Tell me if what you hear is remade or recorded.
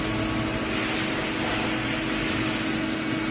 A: recorded